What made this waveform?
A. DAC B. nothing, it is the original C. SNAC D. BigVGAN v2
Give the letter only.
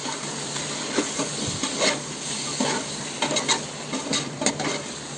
B